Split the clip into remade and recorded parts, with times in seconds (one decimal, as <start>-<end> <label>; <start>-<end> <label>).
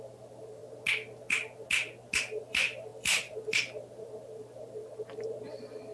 0.0-0.6 remade; 0.6-2.2 recorded; 2.2-5.9 remade